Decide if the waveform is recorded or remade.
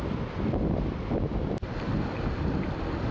recorded